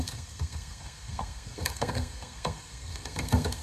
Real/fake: fake